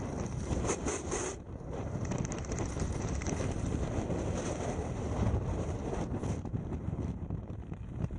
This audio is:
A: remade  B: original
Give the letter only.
A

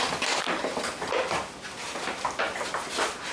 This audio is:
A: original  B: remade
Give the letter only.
A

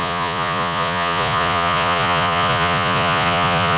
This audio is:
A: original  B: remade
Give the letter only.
B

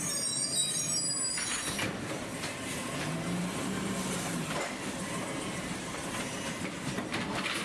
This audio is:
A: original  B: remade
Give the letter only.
B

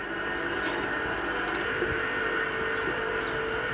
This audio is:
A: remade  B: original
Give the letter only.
B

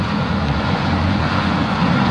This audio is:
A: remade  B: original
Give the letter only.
A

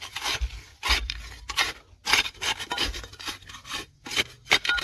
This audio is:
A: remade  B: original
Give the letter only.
B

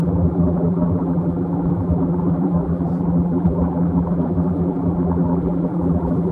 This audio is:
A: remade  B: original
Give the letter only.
A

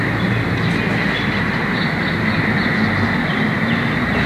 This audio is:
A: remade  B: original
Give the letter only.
B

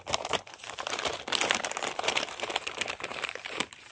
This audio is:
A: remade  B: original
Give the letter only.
A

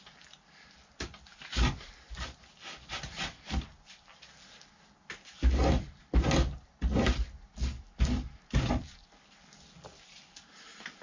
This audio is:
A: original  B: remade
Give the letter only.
A